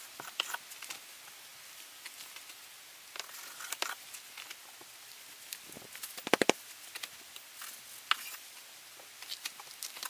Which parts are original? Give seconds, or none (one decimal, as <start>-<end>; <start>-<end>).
0.0-10.1